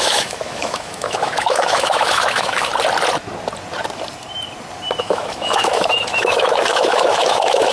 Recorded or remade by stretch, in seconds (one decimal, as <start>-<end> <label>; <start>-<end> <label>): 0.0-2.7 remade; 2.7-5.0 recorded; 5.0-7.7 remade

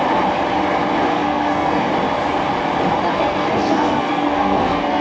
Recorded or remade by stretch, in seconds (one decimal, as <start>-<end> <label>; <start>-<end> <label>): 0.0-1.1 recorded; 1.1-1.9 remade; 1.9-3.1 recorded; 3.1-5.0 remade

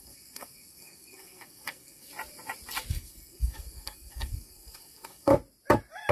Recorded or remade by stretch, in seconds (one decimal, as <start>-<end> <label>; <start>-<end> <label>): 0.0-2.1 remade; 2.1-2.9 recorded; 2.9-5.3 remade; 5.3-6.1 recorded

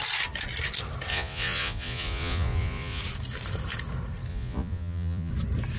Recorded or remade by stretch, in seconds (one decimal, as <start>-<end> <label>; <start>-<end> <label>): 0.0-1.1 recorded; 1.1-3.0 remade; 3.0-4.3 recorded; 4.3-5.3 remade; 5.3-5.8 recorded

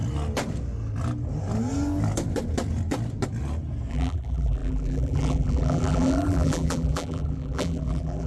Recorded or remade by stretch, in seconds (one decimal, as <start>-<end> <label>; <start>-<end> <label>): 0.0-3.9 recorded; 3.9-8.3 remade

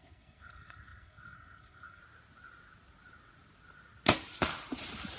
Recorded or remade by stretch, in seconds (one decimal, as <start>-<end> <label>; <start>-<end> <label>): 0.0-2.0 remade; 2.0-5.2 recorded